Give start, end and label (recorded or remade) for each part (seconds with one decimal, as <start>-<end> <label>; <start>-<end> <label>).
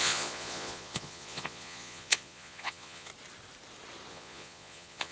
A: 0.0-3.1 remade; 3.1-4.1 recorded; 4.1-5.1 remade